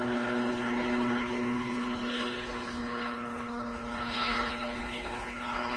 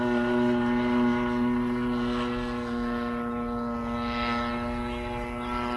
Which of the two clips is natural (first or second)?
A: second